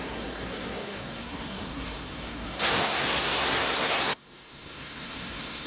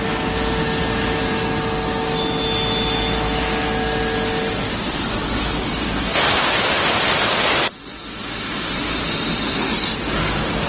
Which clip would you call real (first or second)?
second